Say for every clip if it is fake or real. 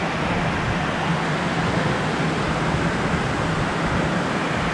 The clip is real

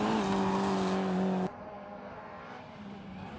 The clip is real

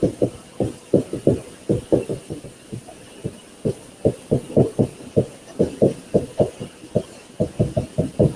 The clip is real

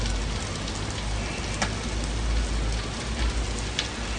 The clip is real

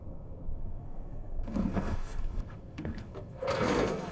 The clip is fake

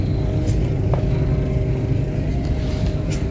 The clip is real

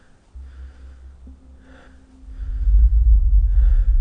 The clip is real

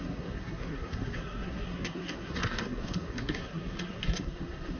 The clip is fake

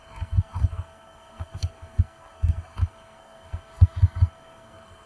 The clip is fake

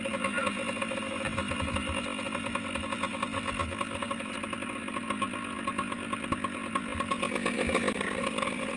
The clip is real